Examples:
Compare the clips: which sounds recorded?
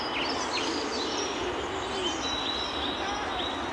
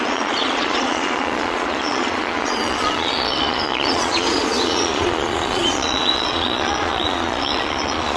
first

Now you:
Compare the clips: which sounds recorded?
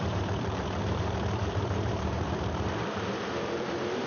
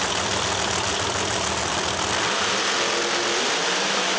second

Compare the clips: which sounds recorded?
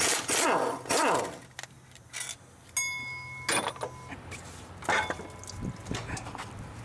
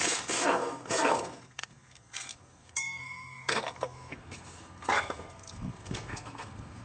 first